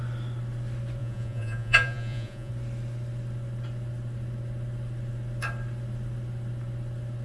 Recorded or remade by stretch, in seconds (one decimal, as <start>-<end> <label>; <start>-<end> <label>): 0.0-1.0 recorded; 1.0-2.5 remade; 2.5-7.2 recorded